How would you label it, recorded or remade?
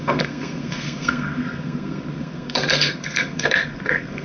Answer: remade